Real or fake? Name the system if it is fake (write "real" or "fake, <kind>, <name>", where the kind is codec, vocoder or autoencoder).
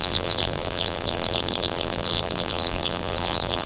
fake, vocoder, BigVGAN v2